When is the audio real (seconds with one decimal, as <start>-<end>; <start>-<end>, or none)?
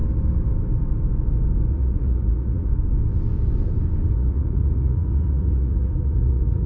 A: 0.0-1.7; 2.7-4.1